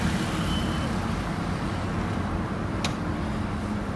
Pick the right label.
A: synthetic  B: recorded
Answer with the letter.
B